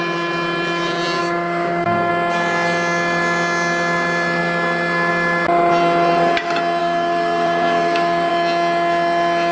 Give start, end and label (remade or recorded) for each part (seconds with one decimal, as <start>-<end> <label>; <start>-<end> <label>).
0.0-1.2 recorded; 1.2-2.1 remade; 2.1-6.8 recorded; 6.8-8.3 remade; 8.3-9.5 recorded